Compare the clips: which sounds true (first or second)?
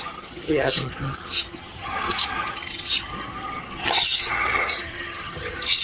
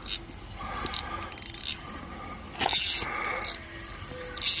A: second